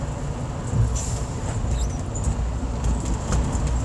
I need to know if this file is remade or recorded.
recorded